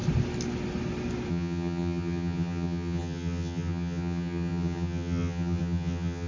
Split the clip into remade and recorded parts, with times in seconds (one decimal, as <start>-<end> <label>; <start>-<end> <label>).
0.0-1.3 recorded; 1.3-6.3 remade